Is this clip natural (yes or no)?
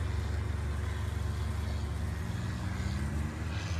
yes